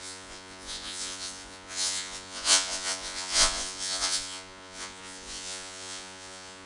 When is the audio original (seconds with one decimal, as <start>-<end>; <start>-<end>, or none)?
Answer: none